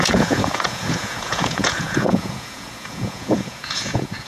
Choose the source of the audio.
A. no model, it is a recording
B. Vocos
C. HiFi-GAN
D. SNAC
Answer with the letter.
B